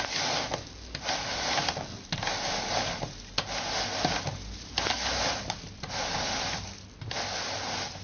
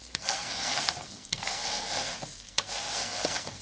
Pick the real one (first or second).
first